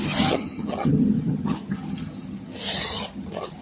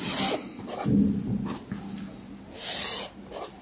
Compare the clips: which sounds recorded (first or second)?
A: second